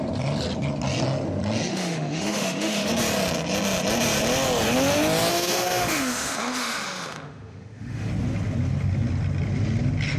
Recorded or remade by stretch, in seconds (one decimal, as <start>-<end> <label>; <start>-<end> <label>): 0.0-1.7 recorded; 1.7-2.9 remade; 2.9-5.3 recorded; 5.3-8.1 remade; 8.1-10.2 recorded